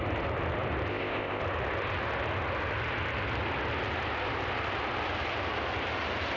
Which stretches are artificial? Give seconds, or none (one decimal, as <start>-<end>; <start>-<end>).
0.9-1.4